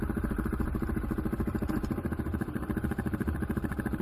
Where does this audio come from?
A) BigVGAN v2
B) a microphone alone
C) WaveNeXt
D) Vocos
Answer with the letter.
A